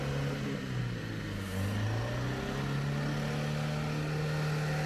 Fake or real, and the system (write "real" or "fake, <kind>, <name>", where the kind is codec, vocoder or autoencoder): real